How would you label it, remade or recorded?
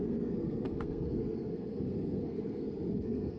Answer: remade